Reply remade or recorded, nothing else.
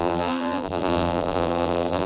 remade